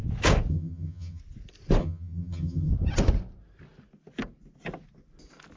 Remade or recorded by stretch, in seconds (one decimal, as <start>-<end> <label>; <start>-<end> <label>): 0.0-0.5 recorded; 0.5-1.2 remade; 1.2-1.8 recorded; 1.8-2.7 remade; 2.7-5.6 recorded